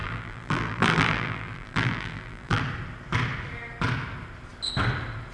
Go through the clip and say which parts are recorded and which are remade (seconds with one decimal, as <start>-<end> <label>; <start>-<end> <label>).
0.0-2.6 remade; 2.6-5.3 recorded